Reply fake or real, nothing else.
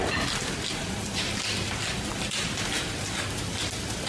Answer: real